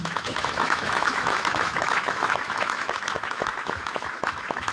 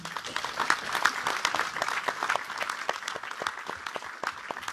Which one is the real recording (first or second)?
second